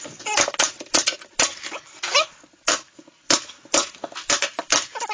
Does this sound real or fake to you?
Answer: real